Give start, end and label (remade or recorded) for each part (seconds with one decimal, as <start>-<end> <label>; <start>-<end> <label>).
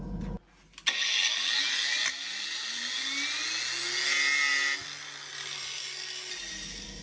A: 0.0-7.0 recorded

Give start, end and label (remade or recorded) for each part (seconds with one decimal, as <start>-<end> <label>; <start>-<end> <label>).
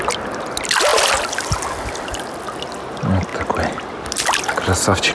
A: 0.0-5.1 recorded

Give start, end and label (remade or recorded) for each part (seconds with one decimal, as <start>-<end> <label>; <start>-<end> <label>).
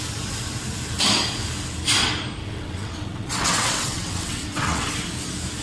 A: 0.0-2.4 recorded; 2.4-4.9 remade; 4.9-5.6 recorded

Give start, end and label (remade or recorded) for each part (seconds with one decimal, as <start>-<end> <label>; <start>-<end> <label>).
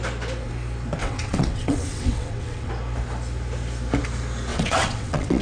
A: 0.0-1.0 recorded; 1.0-2.7 remade; 2.7-4.5 recorded; 4.5-5.4 remade